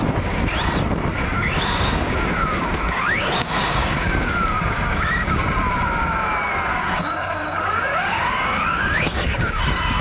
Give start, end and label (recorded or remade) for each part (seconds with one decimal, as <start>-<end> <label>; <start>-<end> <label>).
0.0-1.1 recorded; 1.1-5.4 remade; 5.4-6.7 recorded; 6.7-9.6 remade; 9.6-10.0 recorded